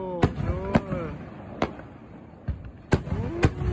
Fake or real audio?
real